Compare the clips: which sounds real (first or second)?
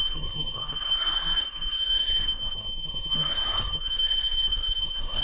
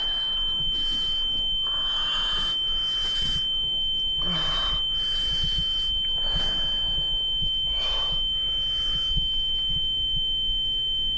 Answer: second